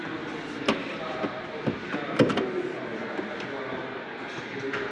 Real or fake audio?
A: real